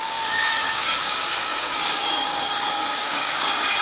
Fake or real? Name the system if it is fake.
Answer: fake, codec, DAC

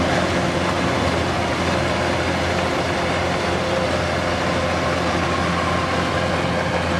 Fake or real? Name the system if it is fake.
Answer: real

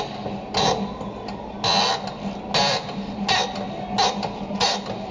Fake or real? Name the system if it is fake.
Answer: real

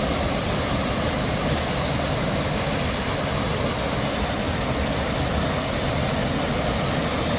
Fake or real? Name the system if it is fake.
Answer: real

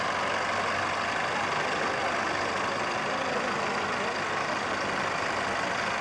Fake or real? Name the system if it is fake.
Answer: real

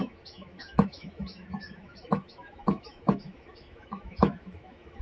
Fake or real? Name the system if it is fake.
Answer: fake, autoencoder, DAC-VAE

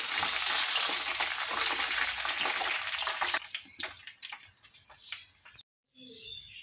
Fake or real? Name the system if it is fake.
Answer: real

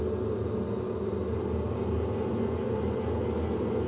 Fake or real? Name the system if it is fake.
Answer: real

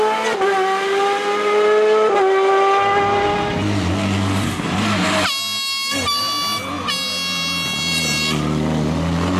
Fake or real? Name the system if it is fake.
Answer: real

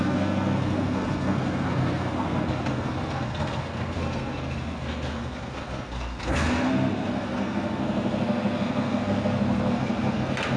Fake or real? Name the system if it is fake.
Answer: fake, codec, SNAC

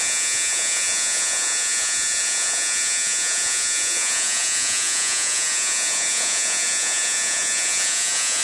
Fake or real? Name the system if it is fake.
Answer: fake, vocoder, Vocos